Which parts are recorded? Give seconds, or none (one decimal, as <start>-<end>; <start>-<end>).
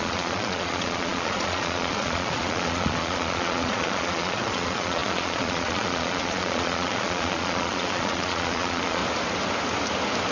9.0-10.3